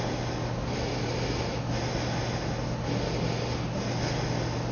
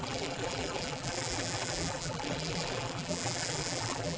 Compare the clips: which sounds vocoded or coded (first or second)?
second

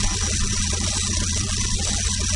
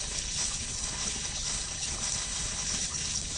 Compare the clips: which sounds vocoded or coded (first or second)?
second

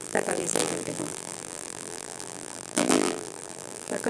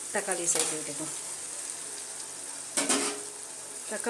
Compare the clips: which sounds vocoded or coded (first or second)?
first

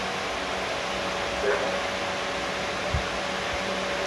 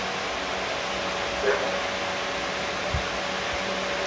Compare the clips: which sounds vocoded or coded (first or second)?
first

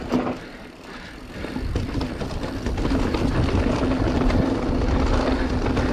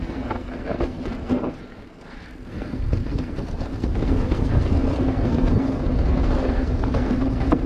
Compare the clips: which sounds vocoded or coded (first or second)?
second